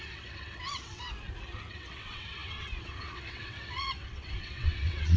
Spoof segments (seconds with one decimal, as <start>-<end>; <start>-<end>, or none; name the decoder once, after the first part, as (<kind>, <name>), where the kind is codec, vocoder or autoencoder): 0.0-1.1 (vocoder, WaveNeXt); 1.7-5.2